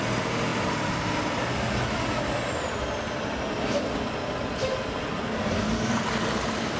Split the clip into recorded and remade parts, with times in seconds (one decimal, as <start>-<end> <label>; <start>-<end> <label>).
0.0-6.8 recorded

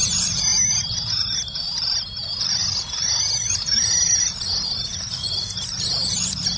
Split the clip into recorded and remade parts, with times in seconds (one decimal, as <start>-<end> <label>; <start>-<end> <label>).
0.0-2.6 remade; 2.6-3.1 recorded; 3.1-6.6 remade

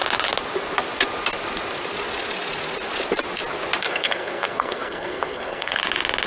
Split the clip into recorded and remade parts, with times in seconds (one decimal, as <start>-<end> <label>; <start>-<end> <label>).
0.0-3.8 recorded; 3.8-5.8 remade; 5.8-6.3 recorded

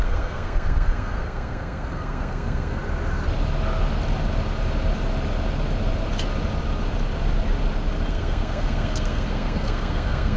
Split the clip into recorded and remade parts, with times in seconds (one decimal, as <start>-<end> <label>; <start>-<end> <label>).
0.0-2.8 remade; 2.8-8.1 recorded; 8.1-10.4 remade

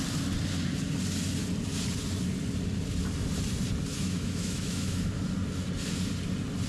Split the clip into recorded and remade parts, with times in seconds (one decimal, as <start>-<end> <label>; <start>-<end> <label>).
0.0-3.9 recorded; 3.9-5.1 remade; 5.1-6.7 recorded